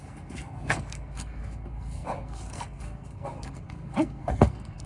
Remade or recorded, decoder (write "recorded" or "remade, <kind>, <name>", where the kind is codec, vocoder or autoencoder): remade, codec, SNAC